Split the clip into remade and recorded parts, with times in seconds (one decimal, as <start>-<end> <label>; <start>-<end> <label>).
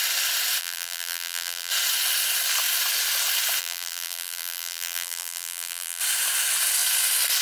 0.0-0.6 recorded; 0.6-1.7 remade; 1.7-3.6 recorded; 3.6-6.0 remade; 6.0-7.4 recorded